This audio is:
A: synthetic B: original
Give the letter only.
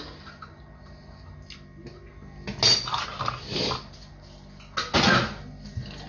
B